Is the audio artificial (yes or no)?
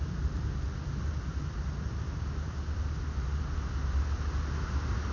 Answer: no